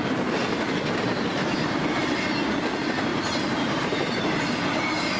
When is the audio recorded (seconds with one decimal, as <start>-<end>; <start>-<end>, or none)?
0.0-1.3; 2.0-3.1; 4.2-5.2